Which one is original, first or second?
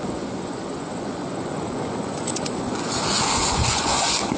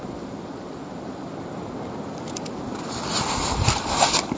second